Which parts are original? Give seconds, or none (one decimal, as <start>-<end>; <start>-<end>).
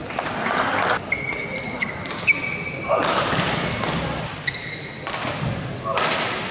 0.0-6.5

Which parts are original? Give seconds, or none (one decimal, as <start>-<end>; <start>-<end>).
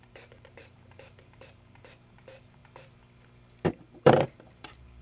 2.6-4.0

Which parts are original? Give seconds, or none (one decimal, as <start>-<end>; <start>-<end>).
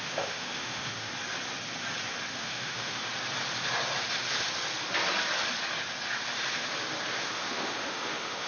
1.1-2.3; 3.0-7.2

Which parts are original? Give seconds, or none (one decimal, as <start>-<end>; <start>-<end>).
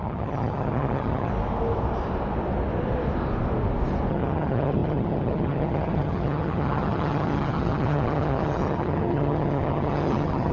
1.3-4.1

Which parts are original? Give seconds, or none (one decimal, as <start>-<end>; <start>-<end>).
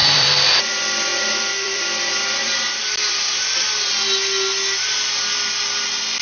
0.6-1.1; 1.8-2.4; 3.4-6.2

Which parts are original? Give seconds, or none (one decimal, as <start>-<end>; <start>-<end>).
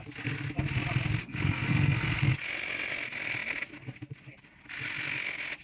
0.0-1.2; 2.2-5.6